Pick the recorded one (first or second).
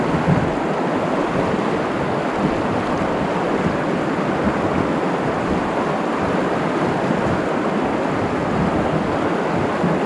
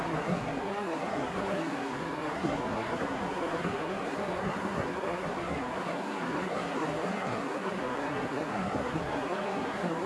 first